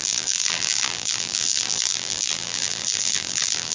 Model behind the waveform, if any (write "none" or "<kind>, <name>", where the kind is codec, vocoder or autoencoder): vocoder, BigVGAN v2